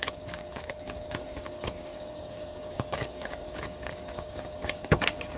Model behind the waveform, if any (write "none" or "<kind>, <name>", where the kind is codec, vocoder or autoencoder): codec, DAC